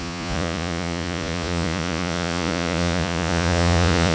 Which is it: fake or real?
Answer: fake